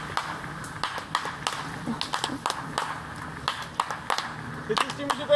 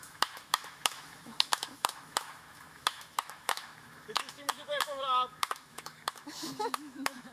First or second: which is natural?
first